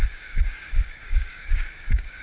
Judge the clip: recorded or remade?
remade